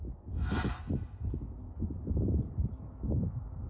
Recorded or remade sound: recorded